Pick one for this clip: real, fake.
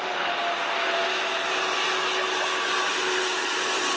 real